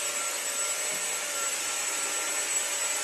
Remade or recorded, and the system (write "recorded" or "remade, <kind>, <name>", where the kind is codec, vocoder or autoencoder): recorded